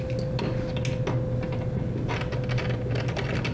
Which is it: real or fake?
real